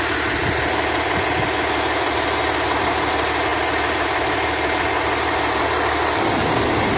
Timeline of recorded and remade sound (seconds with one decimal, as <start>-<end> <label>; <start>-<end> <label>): 0.0-7.0 recorded